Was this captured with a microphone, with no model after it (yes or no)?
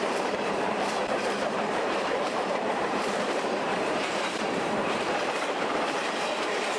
no